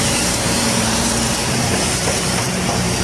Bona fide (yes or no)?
no